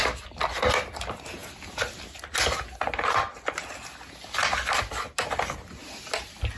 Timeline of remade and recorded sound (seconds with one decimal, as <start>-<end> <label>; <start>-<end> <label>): 0.0-6.6 recorded